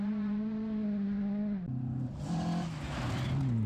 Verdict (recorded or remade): recorded